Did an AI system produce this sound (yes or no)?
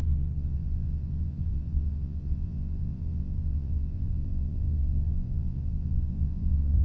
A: yes